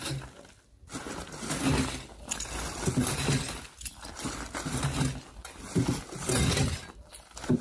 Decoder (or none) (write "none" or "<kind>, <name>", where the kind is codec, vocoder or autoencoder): none